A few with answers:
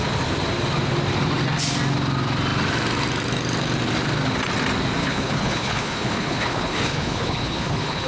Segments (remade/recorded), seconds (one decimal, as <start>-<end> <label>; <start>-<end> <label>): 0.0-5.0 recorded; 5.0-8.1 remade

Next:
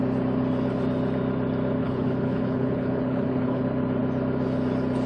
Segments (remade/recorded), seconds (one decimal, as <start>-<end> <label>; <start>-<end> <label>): 0.0-1.8 recorded; 1.8-3.6 remade; 3.6-5.1 recorded

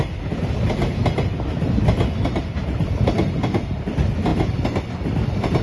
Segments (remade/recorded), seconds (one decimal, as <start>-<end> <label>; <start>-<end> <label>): 0.0-5.6 recorded